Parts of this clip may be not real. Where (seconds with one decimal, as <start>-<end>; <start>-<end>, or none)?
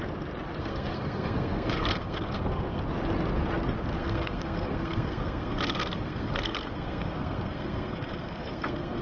0.6-2.8; 4.0-9.0